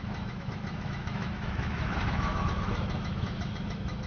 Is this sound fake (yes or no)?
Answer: yes